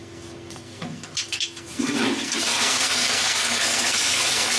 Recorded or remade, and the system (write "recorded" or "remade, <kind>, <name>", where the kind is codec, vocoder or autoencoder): remade, codec, SNAC